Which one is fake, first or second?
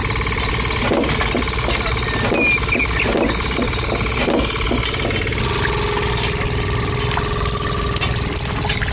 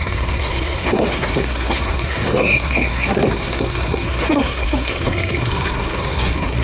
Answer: second